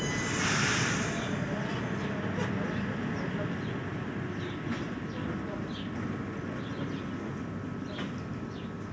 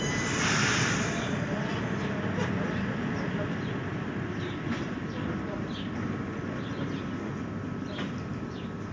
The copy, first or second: second